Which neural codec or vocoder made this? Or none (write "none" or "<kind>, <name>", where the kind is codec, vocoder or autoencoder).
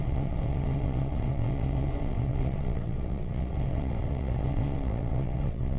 vocoder, WaveNeXt